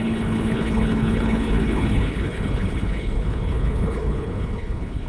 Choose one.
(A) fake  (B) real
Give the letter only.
A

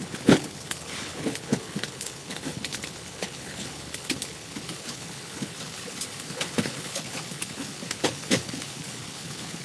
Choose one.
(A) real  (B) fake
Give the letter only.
B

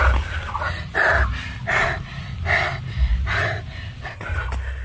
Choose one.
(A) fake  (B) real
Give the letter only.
B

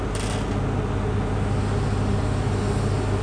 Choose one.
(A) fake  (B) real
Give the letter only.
B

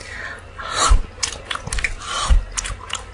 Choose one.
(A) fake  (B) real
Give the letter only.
B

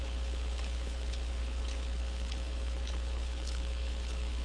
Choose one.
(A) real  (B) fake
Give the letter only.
B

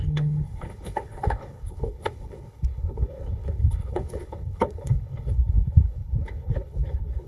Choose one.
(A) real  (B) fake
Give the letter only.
B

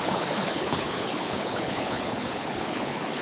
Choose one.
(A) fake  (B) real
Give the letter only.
A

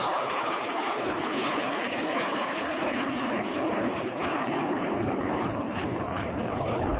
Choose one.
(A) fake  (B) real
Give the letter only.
A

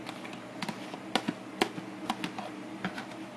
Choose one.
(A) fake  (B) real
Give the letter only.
B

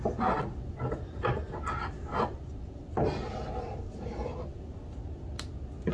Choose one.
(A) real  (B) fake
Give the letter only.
A